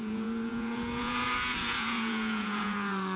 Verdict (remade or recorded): remade